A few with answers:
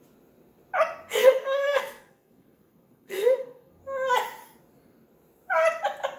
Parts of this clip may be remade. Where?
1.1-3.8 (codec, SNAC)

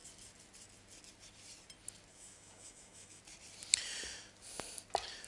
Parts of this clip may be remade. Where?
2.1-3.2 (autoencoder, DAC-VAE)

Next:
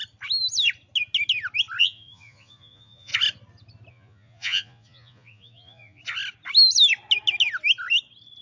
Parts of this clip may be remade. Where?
1.8-3.1 (vocoder, Vocos); 3.9-6.0